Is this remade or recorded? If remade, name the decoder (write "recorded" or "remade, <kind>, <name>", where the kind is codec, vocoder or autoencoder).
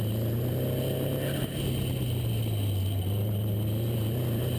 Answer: recorded